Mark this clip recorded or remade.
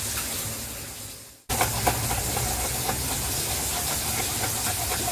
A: recorded